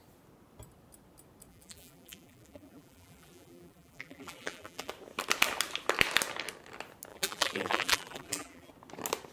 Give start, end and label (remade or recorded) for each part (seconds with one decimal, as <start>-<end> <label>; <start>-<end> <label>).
0.0-1.5 recorded; 1.5-4.9 remade; 4.9-7.1 recorded; 7.1-8.7 remade; 8.7-9.3 recorded